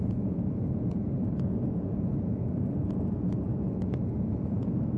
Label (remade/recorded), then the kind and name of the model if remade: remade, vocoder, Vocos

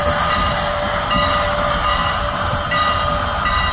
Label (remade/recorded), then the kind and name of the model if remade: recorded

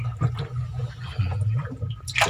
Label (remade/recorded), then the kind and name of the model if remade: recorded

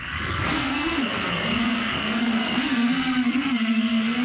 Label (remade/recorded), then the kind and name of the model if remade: remade, codec, SNAC